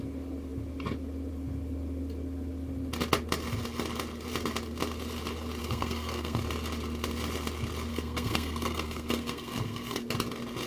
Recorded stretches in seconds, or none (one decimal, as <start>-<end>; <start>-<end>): 0.0-5.6; 6.4-7.9; 10.0-10.7